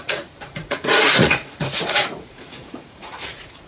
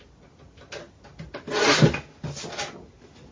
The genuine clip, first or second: second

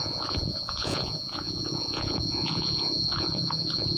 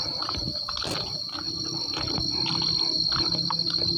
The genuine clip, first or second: second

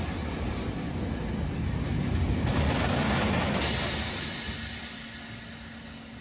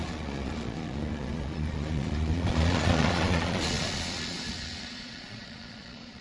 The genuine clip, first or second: first